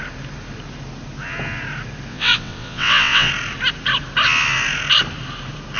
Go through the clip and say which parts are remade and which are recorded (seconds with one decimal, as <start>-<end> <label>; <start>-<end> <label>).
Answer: 0.0-2.1 recorded; 2.1-3.3 remade; 3.3-5.8 recorded